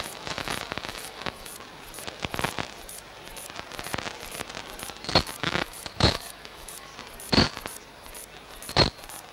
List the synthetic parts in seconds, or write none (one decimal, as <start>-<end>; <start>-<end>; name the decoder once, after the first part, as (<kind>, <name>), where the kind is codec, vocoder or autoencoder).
0.0-1.5 (autoencoder, DAC-VAE); 5.4-6.9